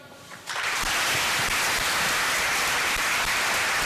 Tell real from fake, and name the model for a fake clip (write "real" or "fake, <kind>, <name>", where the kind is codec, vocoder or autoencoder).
fake, vocoder, BigVGAN v2